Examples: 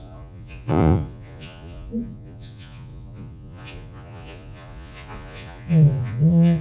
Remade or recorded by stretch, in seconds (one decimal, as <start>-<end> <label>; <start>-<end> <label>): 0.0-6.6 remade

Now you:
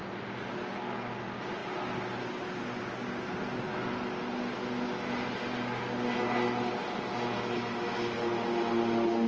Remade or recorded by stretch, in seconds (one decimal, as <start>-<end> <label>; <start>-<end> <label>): 0.0-9.3 recorded

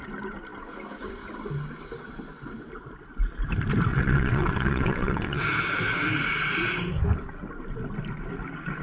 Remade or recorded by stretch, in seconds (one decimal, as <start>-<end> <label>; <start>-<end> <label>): 0.0-3.9 recorded; 3.9-5.4 remade; 5.4-8.8 recorded